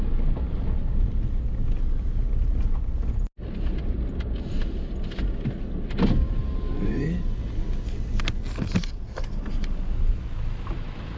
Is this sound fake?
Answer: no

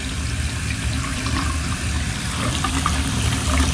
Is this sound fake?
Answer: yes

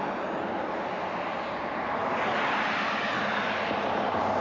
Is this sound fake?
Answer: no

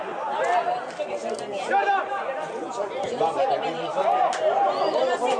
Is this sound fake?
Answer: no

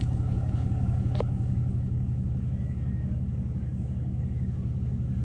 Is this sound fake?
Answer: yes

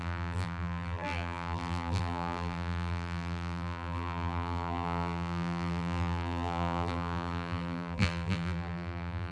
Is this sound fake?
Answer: yes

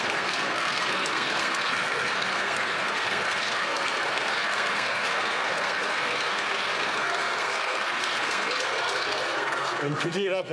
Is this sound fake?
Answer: yes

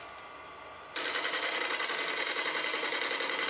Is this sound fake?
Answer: no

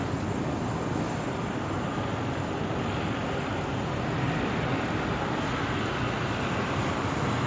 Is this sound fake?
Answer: no